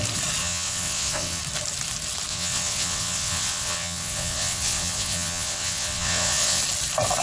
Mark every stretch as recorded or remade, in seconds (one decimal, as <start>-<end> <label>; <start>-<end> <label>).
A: 0.0-0.4 recorded; 0.4-1.4 remade; 1.4-2.3 recorded; 2.3-6.6 remade; 6.6-7.2 recorded